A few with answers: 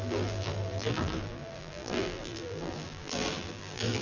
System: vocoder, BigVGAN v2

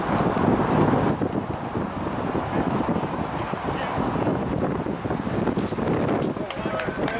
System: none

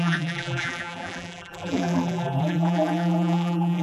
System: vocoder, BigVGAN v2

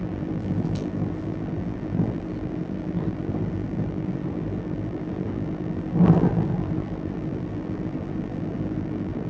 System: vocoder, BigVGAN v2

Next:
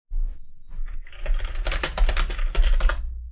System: none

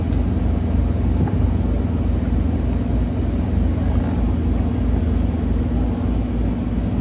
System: none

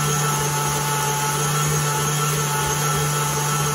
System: none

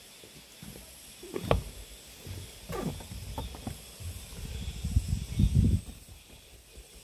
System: none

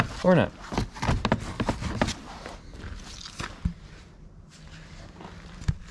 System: none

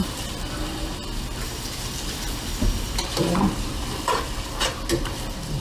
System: vocoder, BigVGAN v2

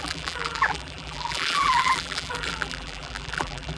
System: vocoder, BigVGAN v2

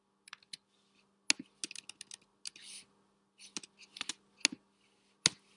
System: none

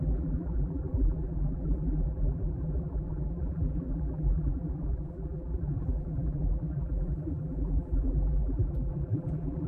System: vocoder, BigVGAN v2